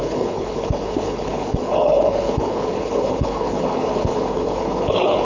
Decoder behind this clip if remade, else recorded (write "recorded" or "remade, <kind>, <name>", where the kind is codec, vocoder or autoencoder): remade, codec, HILCodec